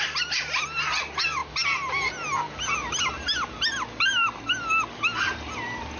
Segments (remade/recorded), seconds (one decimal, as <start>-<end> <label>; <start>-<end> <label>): 0.0-6.0 recorded